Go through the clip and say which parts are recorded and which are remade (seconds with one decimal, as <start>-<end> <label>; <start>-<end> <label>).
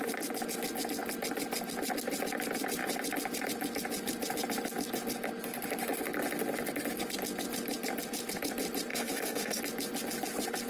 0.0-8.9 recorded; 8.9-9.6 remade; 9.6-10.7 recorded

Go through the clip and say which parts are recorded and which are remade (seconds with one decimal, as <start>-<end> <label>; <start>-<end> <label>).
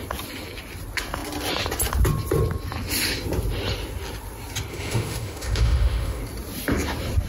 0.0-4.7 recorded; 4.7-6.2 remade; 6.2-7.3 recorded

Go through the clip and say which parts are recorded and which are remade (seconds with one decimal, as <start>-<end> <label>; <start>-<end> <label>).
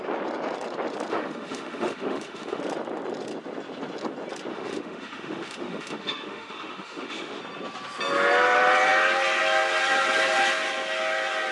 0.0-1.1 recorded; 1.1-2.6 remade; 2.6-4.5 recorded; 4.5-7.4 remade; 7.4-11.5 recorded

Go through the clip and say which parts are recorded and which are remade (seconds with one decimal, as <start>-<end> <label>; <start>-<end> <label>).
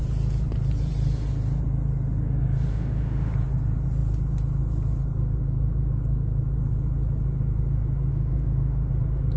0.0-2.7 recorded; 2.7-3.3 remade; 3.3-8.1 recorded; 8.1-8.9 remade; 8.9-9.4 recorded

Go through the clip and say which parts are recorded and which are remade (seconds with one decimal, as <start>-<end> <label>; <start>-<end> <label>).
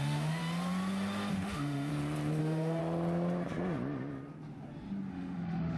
0.0-0.4 remade; 0.4-1.3 recorded; 1.3-1.9 remade; 1.9-2.4 recorded; 2.4-2.8 remade; 2.8-5.1 recorded; 5.1-5.8 remade